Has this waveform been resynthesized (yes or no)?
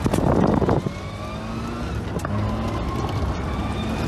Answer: no